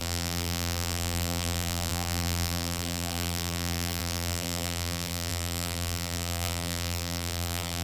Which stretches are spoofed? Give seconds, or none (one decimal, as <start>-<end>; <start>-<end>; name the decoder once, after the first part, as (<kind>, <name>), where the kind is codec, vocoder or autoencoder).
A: 0.0-7.8 (vocoder, BigVGAN v2)